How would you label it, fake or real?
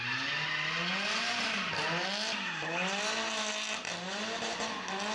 real